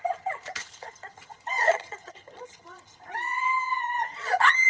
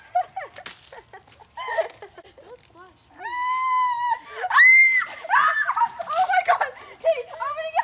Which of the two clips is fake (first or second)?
first